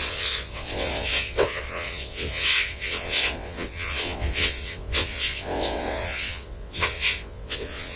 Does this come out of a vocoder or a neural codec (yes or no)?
yes